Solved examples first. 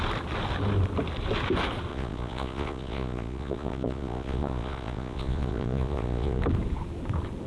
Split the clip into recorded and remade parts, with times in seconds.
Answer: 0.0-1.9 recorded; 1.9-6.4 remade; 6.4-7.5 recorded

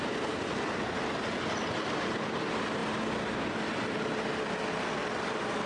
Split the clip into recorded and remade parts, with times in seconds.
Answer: 0.0-5.7 recorded

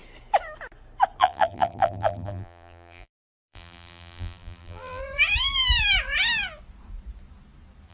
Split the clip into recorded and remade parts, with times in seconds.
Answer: 0.0-1.2 recorded; 1.2-5.0 remade; 5.0-7.9 recorded

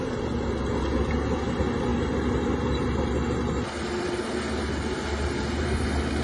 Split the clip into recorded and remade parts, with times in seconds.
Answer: 0.0-6.2 recorded

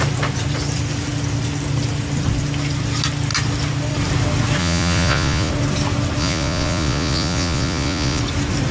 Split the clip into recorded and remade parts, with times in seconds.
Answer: 0.0-4.6 recorded; 4.6-5.5 remade; 5.5-6.2 recorded; 6.2-8.2 remade; 8.2-8.7 recorded